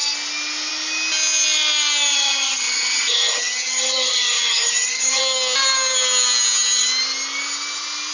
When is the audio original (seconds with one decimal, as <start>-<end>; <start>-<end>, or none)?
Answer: 0.0-2.1; 5.2-8.1